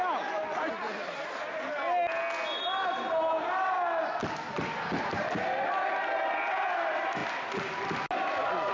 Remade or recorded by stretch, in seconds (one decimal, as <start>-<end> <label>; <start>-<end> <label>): 0.0-8.7 recorded